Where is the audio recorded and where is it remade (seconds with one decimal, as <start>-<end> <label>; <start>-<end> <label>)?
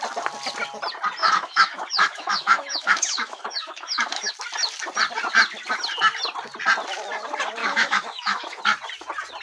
0.0-1.2 recorded; 1.2-4.3 remade; 4.3-7.6 recorded; 7.6-8.6 remade; 8.6-9.4 recorded